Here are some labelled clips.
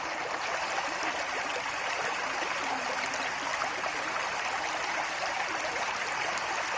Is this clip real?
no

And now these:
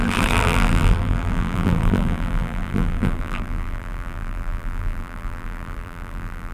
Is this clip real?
no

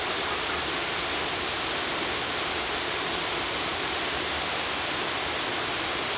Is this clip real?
yes